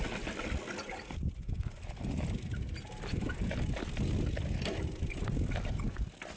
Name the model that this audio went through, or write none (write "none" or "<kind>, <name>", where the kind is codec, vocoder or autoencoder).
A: none